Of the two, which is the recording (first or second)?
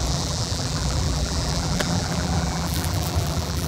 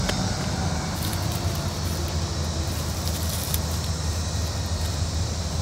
second